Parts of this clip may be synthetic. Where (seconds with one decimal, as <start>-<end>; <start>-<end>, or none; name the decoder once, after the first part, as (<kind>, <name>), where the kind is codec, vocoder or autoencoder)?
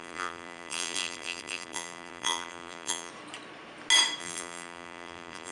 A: 0.0-3.1 (vocoder, BigVGAN v2); 4.2-5.5